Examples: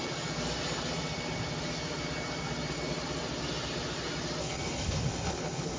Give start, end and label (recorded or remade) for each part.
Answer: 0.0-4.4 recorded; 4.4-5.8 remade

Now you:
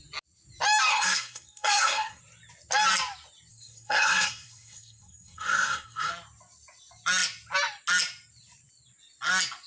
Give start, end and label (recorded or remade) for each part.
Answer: 0.0-0.9 recorded; 0.9-2.2 remade; 2.2-3.5 recorded; 3.5-6.1 remade; 6.1-9.7 recorded

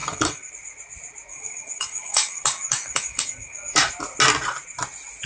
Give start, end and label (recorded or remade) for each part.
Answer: 0.0-0.5 remade; 0.5-1.3 recorded; 1.3-3.8 remade; 3.8-5.3 recorded

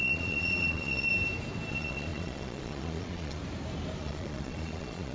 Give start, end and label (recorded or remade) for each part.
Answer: 0.0-1.1 remade; 1.1-1.7 recorded; 1.7-3.4 remade; 3.4-4.0 recorded; 4.0-5.1 remade

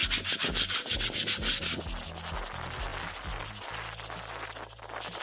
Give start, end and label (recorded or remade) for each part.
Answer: 0.0-5.2 recorded